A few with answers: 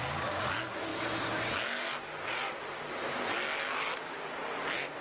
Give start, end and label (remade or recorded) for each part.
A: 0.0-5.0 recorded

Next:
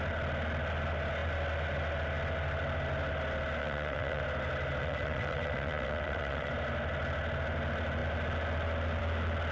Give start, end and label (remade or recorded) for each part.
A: 0.0-3.6 recorded; 3.6-4.2 remade; 4.2-4.8 recorded; 4.8-6.5 remade; 6.5-9.5 recorded

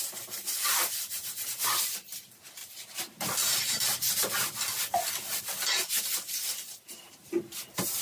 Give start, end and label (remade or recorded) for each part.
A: 0.0-6.4 recorded; 6.4-7.3 remade; 7.3-8.0 recorded

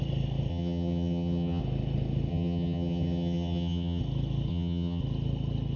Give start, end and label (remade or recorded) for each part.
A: 0.0-0.5 recorded; 0.5-1.6 remade; 1.6-2.3 recorded; 2.3-4.0 remade; 4.0-4.5 recorded; 4.5-5.0 remade; 5.0-5.8 recorded

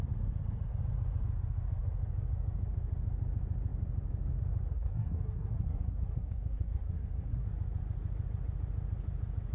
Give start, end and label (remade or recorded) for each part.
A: 0.0-4.7 recorded; 4.7-7.5 remade; 7.5-9.5 recorded